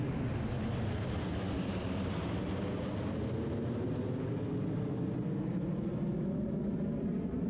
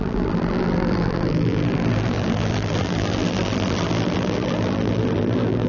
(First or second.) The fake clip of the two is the second